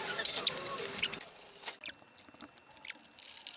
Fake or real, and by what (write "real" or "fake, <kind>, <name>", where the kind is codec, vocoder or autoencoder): real